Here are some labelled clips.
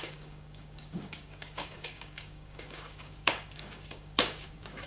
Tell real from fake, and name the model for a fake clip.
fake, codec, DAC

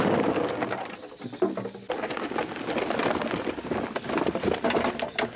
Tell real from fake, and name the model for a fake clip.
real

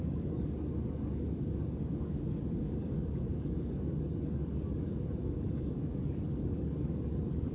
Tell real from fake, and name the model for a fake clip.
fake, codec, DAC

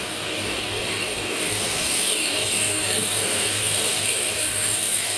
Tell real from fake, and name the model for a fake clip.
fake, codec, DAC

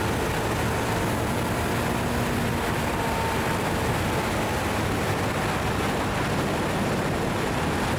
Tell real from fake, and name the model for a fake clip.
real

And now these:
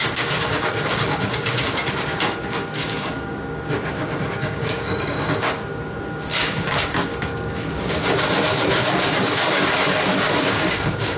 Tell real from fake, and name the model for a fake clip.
fake, codec, DAC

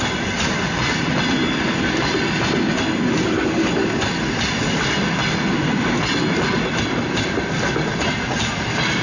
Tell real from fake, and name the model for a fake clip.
real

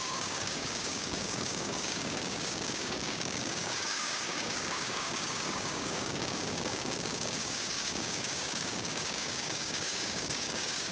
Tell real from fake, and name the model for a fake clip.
fake, codec, DAC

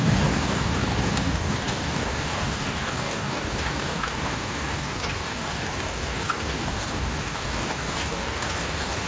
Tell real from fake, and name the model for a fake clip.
fake, codec, DAC